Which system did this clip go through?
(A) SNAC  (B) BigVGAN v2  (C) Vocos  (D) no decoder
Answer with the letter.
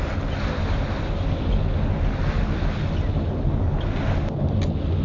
D